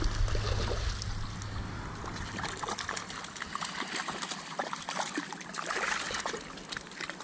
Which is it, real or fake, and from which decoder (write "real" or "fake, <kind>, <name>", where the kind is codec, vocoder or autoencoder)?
real